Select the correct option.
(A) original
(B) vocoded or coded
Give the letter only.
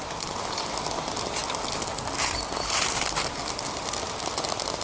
A